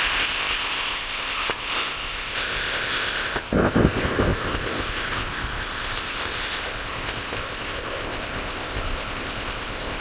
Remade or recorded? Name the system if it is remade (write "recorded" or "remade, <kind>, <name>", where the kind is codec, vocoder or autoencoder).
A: remade, codec, ZipCodec